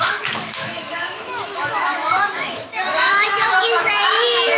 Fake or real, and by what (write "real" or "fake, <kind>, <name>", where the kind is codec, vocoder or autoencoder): fake, autoencoder, DAC-VAE